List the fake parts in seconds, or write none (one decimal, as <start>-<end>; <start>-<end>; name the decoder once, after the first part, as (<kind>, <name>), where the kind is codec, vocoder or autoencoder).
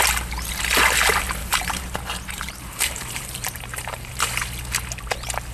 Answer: 1.4-4.1 (vocoder, BigVGAN v2)